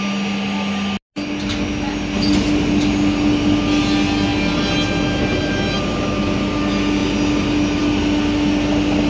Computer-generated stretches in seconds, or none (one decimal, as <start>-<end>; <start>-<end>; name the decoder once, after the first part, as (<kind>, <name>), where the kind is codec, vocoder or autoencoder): none